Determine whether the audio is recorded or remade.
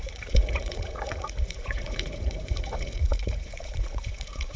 remade